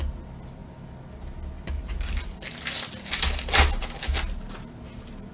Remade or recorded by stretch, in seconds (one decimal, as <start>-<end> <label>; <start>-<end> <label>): 0.0-5.3 recorded